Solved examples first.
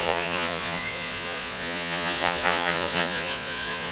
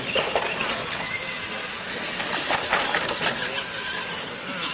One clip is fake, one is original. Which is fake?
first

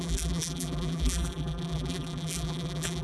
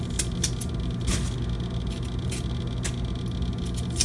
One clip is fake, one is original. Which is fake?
first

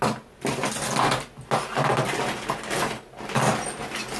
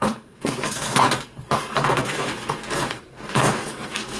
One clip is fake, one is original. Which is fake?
second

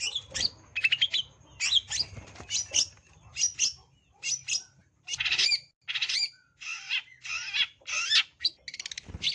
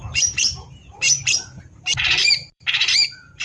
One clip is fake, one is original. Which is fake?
second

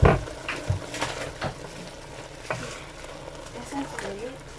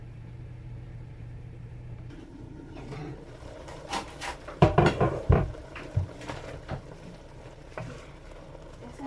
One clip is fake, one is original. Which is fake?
second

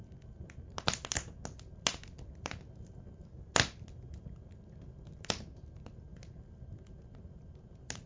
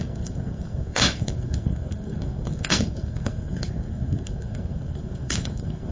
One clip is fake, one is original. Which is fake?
second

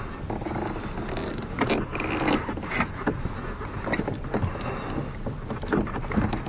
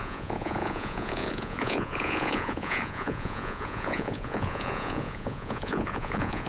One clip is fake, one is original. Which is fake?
second